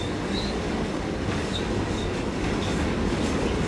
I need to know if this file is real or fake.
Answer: fake